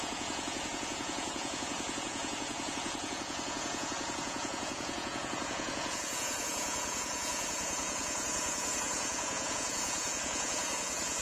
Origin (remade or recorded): remade